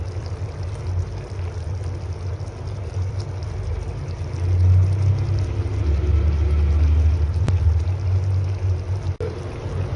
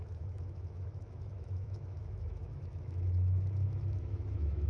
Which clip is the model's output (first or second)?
second